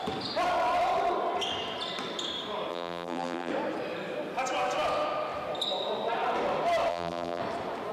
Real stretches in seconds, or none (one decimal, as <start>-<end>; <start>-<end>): 0.0-2.7; 3.5-6.9; 7.4-7.9